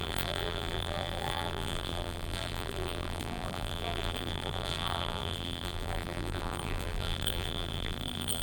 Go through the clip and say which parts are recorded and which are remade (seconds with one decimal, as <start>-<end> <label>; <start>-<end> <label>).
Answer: 0.0-8.4 remade